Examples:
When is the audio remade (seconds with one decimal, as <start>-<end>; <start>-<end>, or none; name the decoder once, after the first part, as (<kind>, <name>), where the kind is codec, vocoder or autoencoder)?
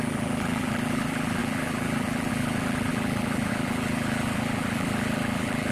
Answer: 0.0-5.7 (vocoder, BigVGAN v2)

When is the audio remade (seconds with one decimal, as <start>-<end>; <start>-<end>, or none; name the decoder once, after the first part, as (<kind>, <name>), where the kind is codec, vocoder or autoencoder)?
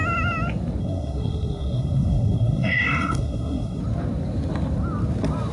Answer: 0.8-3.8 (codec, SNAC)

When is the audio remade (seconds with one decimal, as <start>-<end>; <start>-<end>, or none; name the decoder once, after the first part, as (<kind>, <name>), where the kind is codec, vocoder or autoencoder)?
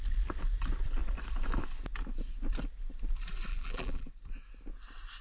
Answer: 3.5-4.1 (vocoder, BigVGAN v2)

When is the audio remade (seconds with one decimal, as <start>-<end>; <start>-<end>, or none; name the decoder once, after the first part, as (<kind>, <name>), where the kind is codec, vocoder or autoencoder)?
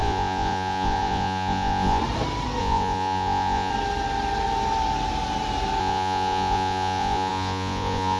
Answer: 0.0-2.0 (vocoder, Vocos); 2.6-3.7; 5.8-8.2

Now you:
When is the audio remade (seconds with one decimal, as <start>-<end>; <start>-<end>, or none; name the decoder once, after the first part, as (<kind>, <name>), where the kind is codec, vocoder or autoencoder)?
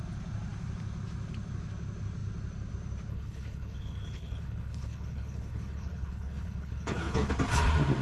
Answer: 3.1-7.3 (codec, HILCodec)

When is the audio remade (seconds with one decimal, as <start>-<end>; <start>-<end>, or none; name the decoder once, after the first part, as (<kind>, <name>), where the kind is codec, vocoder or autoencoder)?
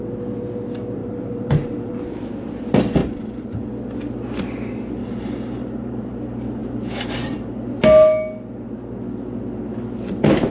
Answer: 1.0-2.0 (vocoder, BigVGAN v2); 3.0-3.6; 5.0-5.9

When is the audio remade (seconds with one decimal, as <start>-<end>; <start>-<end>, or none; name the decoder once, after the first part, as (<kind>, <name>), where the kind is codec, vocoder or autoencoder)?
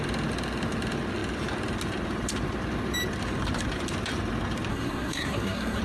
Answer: 4.7-5.8 (codec, SNAC)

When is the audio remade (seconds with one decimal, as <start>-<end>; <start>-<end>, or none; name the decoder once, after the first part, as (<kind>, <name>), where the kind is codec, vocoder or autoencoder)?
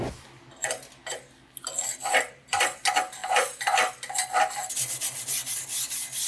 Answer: none